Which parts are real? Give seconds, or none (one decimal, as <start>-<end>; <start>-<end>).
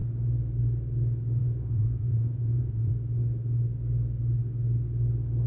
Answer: 0.0-1.4; 2.9-5.5